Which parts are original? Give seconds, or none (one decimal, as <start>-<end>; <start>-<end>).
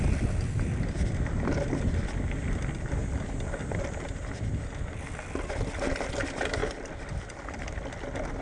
0.0-8.4